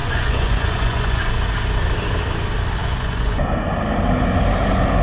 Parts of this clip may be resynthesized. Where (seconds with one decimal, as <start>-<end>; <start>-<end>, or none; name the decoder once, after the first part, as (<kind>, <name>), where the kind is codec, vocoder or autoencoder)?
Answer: 0.0-1.3 (vocoder, Vocos); 2.8-3.5